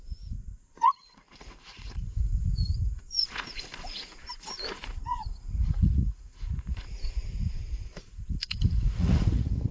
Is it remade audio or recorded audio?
remade